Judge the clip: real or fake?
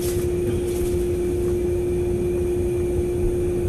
real